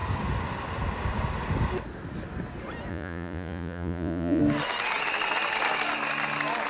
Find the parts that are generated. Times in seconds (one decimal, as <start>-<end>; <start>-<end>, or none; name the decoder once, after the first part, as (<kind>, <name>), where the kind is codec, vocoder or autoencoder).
2.9-4.4 (vocoder, Vocos)